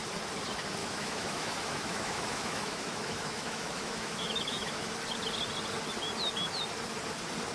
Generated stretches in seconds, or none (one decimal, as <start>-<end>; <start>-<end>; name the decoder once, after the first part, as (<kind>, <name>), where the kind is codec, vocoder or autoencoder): 0.8-4.9 (autoencoder, DAC-VAE)